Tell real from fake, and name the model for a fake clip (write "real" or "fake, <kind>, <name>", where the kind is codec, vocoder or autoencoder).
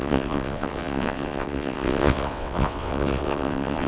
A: fake, vocoder, WaveNeXt